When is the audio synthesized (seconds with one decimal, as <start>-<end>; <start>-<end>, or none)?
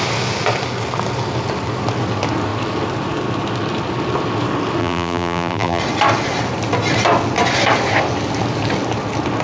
4.8-5.8